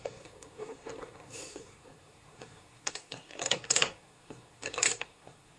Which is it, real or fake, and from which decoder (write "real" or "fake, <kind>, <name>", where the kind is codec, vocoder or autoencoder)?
fake, codec, SNAC